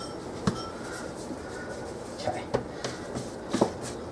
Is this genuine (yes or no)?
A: yes